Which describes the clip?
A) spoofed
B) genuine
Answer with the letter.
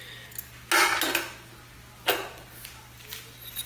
B